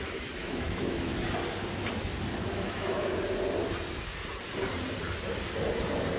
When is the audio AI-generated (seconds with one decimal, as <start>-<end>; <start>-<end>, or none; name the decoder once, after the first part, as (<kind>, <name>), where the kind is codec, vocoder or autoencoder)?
0.4-1.1 (autoencoder, DAC-VAE); 2.4-3.2